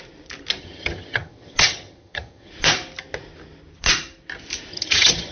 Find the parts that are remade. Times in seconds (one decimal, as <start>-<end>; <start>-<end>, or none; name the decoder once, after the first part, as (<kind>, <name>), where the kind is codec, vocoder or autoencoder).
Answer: 0.6-2.5 (vocoder, HiFi-GAN); 4.7-5.3